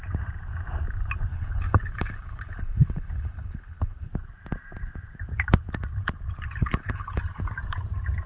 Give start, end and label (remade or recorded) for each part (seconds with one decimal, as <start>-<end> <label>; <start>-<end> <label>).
0.0-1.3 recorded; 1.3-4.1 remade; 4.1-6.6 recorded; 6.6-7.2 remade; 7.2-8.3 recorded